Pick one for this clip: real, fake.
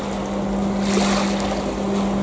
real